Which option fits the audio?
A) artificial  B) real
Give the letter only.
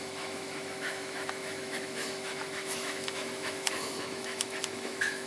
A